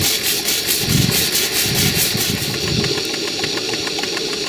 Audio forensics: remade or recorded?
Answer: recorded